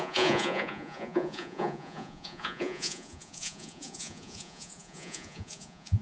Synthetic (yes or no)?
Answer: yes